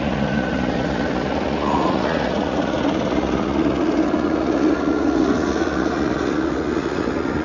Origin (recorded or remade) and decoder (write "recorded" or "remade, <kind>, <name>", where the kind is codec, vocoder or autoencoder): remade, vocoder, Vocos